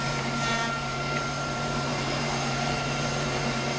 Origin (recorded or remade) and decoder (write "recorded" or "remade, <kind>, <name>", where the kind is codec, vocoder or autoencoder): remade, vocoder, BigVGAN v2